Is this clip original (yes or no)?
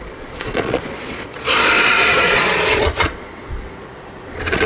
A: no